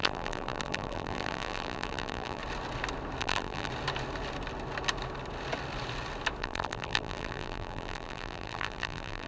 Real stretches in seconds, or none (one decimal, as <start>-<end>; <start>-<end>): 2.4-3.2; 3.7-6.4